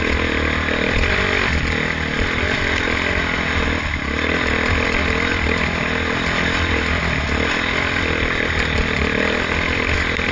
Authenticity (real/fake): real